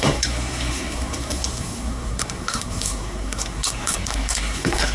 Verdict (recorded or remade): remade